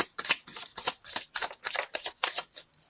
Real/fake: fake